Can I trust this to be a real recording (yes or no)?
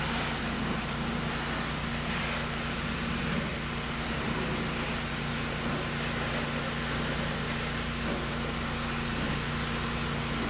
yes